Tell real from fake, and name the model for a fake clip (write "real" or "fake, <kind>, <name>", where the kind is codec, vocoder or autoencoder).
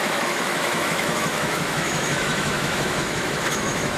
fake, autoencoder, DAC-VAE